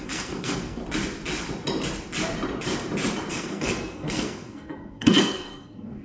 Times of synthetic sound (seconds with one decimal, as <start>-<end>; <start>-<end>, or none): 0.0-0.8; 3.3-6.0